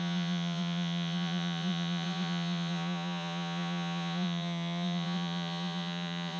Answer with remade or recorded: remade